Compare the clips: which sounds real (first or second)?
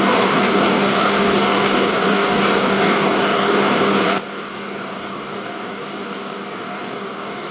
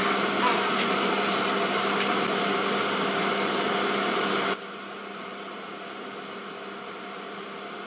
second